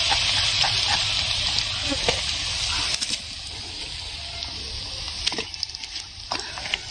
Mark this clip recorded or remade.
recorded